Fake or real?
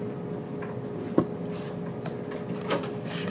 real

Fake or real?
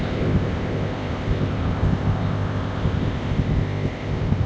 fake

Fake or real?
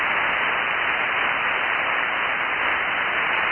real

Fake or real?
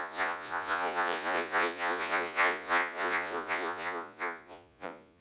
fake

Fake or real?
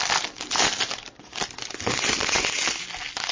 real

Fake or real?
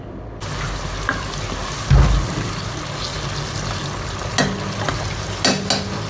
real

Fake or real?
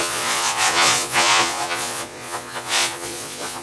fake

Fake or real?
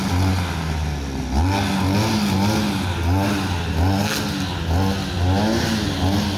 real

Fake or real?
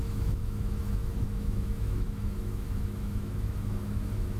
fake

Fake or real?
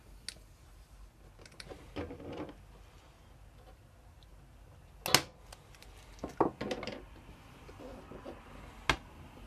real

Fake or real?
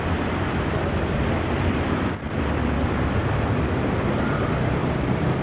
real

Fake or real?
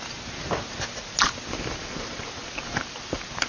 real